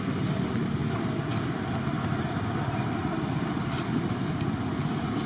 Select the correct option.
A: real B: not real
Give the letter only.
A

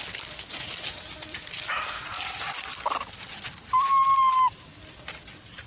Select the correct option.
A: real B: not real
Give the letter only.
A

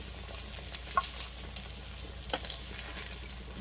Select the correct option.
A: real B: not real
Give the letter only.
A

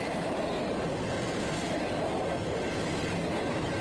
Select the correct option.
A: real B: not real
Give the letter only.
A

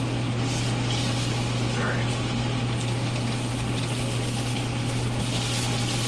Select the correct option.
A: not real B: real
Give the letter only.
B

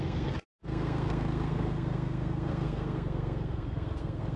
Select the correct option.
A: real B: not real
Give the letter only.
B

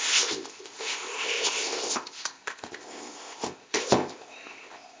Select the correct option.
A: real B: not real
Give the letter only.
B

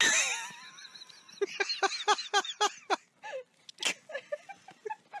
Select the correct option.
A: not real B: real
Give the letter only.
B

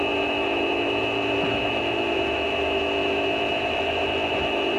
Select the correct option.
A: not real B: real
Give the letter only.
A